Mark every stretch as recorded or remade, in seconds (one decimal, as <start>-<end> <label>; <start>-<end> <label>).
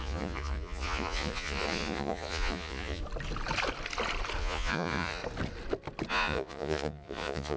0.0-3.0 remade; 3.0-4.4 recorded; 4.4-5.2 remade; 5.2-6.1 recorded; 6.1-7.6 remade